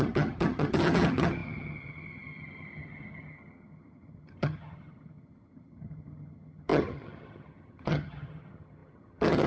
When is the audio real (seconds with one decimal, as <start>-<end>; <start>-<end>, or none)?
none